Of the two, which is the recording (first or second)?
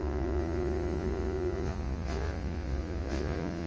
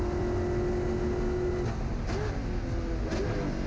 second